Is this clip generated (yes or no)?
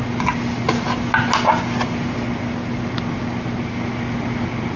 no